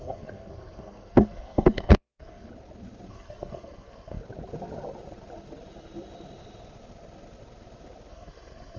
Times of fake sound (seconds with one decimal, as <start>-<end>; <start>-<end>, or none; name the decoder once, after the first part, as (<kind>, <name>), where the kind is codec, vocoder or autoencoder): 0.0-2.5 (codec, SNAC); 3.1-4.2; 8.1-8.8